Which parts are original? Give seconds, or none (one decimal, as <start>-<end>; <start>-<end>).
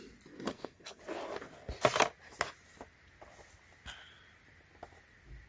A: 0.0-0.5; 1.0-5.5